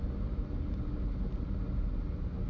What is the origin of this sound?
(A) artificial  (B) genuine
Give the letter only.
B